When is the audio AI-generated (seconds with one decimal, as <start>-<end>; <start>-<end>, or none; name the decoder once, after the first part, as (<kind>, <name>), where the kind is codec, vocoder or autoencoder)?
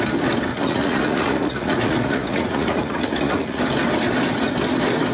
0.5-3.6 (vocoder, Vocos)